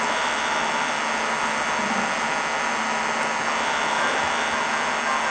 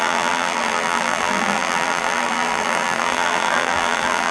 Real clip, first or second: first